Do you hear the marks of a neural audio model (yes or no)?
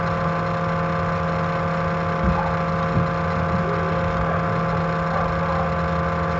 no